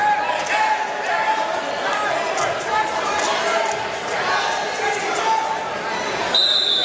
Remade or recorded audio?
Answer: recorded